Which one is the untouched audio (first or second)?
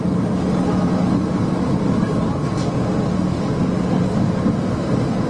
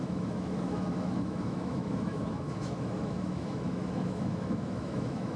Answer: first